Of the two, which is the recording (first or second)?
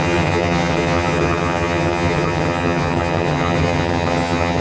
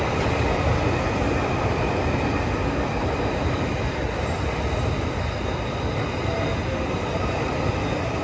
second